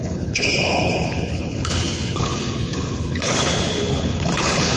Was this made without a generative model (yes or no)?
no